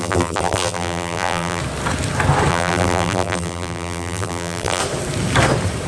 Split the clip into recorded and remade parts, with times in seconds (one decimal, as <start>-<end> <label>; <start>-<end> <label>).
0.0-1.6 remade; 1.6-2.5 recorded; 2.5-4.8 remade; 4.8-5.9 recorded